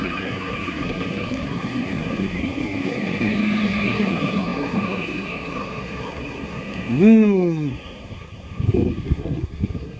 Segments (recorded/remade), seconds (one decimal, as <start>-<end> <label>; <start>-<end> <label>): 0.0-10.0 remade